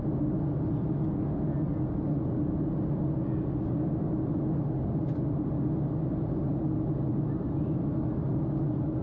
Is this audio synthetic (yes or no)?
no